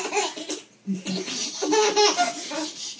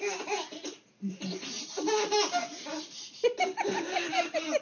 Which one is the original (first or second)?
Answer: first